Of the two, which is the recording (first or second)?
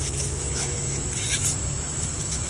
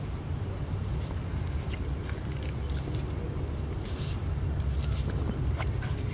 second